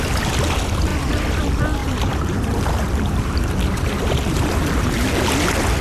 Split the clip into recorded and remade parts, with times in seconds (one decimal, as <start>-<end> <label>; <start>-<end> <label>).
0.0-1.8 recorded; 1.8-5.3 remade; 5.3-5.8 recorded